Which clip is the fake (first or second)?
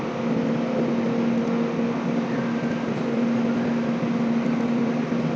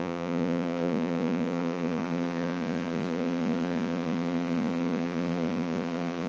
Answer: second